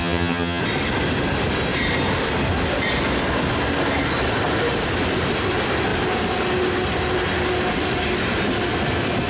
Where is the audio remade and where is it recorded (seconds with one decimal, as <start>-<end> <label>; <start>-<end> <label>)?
0.0-0.6 remade; 0.6-9.3 recorded

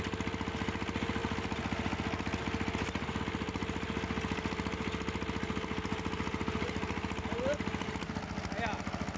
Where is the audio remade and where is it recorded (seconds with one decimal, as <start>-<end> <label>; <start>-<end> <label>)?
0.0-9.2 recorded

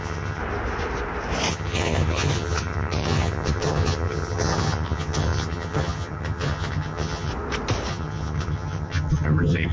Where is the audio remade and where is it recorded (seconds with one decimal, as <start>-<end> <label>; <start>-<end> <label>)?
0.0-0.4 remade; 0.4-1.5 recorded; 1.5-7.3 remade; 7.3-7.9 recorded; 7.9-9.7 remade

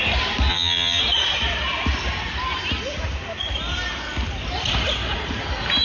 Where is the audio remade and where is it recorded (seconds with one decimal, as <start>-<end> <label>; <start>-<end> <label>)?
0.0-0.5 recorded; 0.5-1.0 remade; 1.0-5.8 recorded

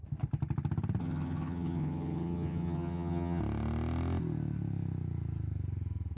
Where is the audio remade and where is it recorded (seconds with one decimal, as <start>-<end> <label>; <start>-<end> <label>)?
0.0-1.0 recorded; 1.0-3.4 remade; 3.4-6.2 recorded

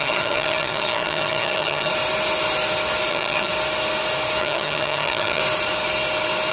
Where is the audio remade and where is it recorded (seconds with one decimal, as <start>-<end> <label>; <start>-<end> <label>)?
0.0-1.9 remade; 1.9-3.1 recorded; 3.1-3.5 remade; 3.5-4.4 recorded; 4.4-5.4 remade; 5.4-6.5 recorded